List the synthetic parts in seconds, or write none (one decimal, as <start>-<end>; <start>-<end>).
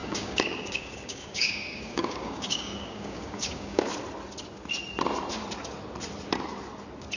0.0-3.9